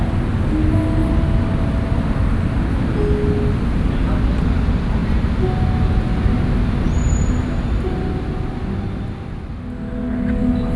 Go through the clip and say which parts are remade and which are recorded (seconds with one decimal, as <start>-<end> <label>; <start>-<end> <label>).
0.0-10.8 recorded

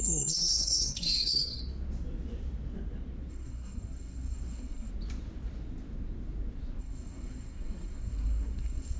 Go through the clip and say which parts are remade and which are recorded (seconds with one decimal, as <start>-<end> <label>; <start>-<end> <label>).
0.0-1.6 remade; 1.6-3.3 recorded; 3.3-4.9 remade; 4.9-6.8 recorded; 6.8-9.0 remade

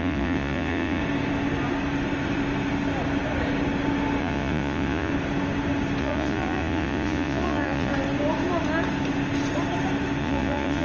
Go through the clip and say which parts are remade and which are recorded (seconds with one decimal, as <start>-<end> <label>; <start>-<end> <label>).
0.0-1.0 remade; 1.0-4.2 recorded; 4.2-5.1 remade; 5.1-6.0 recorded; 6.0-7.9 remade; 7.9-10.2 recorded; 10.2-10.8 remade

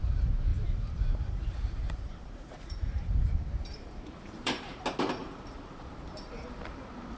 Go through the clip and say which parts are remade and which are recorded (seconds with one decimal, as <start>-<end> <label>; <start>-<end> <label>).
0.0-0.5 recorded; 0.5-4.8 remade; 4.8-5.2 recorded; 5.2-6.6 remade; 6.6-7.2 recorded

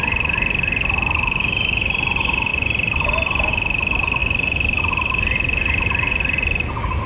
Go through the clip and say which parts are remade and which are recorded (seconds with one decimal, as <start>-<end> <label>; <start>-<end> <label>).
0.0-2.5 recorded; 2.5-3.5 remade; 3.5-4.2 recorded; 4.2-4.8 remade; 4.8-7.1 recorded

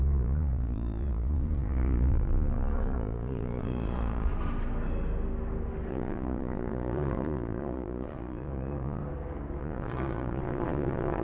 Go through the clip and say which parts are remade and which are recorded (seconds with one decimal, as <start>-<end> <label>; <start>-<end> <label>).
0.0-4.3 remade; 4.3-5.9 recorded; 5.9-9.0 remade; 9.0-9.6 recorded; 9.6-11.2 remade